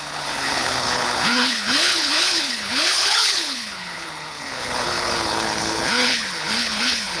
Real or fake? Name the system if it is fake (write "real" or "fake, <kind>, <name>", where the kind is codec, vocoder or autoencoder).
fake, codec, HILCodec